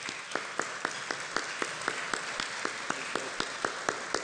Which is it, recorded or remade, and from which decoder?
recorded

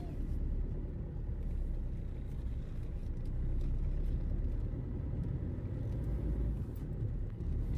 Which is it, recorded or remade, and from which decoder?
recorded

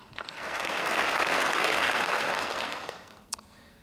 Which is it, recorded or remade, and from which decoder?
remade, codec, SNAC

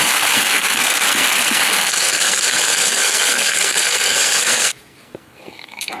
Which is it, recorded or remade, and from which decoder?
remade, codec, SNAC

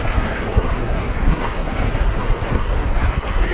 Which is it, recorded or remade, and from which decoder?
remade, codec, SNAC